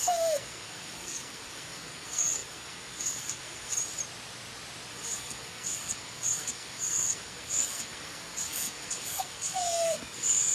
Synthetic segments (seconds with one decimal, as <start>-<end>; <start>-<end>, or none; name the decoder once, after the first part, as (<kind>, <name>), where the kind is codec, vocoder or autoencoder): 0.0-3.8 (codec, SNAC); 4.9-10.5